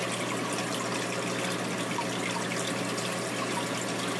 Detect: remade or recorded recorded